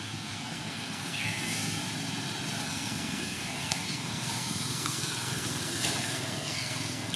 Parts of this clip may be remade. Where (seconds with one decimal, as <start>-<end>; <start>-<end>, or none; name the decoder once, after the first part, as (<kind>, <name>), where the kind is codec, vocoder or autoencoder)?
0.0-1.8 (codec, SNAC); 2.6-7.2